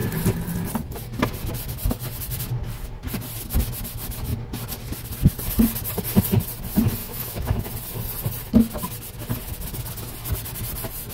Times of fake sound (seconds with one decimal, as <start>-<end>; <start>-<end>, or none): 7.0-7.7